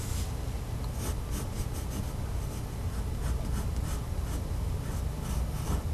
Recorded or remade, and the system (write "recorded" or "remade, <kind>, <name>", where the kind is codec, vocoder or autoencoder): recorded